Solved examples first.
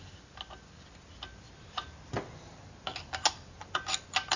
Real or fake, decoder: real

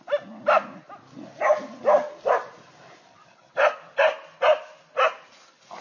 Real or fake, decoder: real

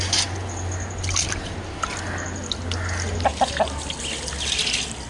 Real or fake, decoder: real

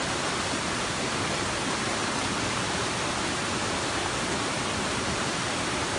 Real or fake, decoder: fake, vocoder, BigVGAN v2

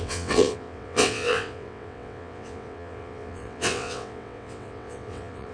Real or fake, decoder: fake, vocoder, WaveNeXt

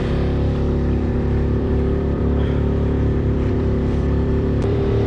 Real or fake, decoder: fake, vocoder, BigVGAN v2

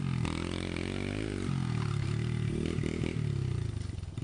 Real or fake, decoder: real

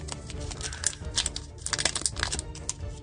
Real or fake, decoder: real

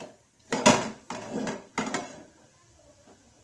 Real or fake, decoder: real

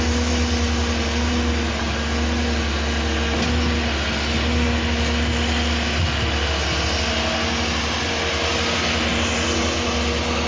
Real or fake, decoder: real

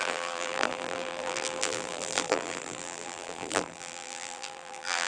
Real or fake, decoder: fake, vocoder, BigVGAN v2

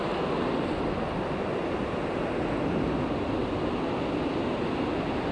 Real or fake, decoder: real